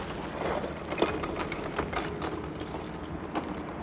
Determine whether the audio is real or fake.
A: real